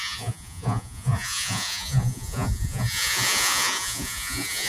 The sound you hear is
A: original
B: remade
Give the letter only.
B